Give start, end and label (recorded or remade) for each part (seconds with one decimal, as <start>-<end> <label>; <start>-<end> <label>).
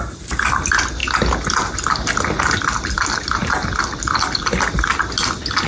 0.0-5.7 recorded